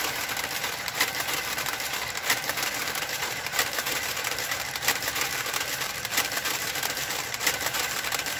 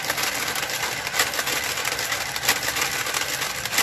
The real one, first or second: second